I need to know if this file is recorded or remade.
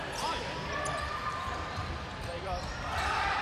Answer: remade